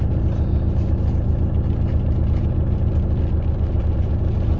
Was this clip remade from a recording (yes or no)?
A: no